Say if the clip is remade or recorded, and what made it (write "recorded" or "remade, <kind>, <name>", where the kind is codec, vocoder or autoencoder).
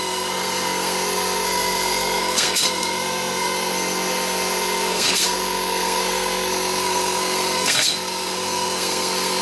remade, codec, SNAC